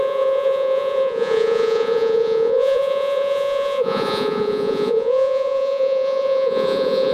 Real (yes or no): no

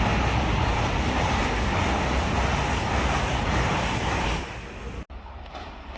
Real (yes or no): yes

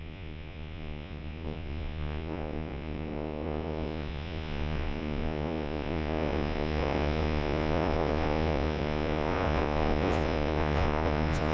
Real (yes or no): no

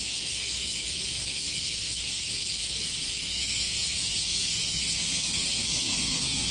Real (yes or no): no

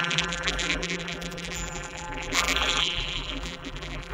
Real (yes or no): no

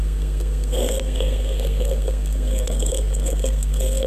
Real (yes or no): no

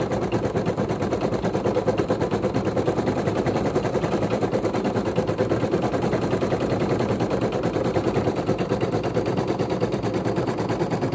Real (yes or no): yes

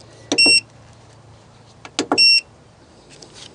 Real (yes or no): yes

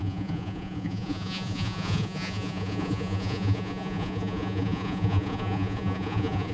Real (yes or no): no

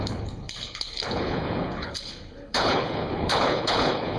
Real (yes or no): no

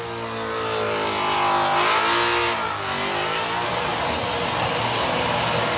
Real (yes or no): yes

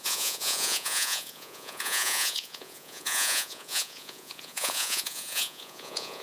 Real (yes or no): no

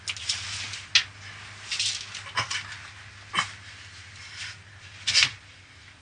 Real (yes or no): yes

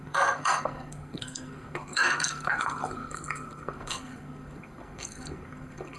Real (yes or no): no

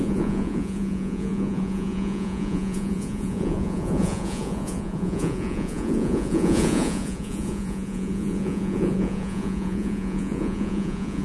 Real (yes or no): no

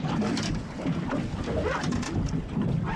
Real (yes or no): yes